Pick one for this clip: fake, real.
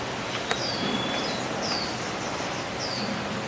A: real